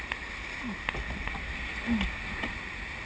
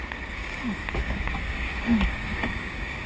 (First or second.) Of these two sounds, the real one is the first